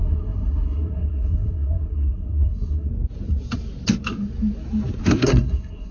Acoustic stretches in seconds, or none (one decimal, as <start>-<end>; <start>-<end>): 2.9-5.0